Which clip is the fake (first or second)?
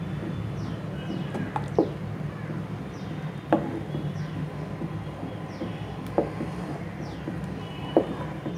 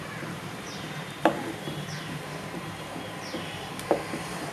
second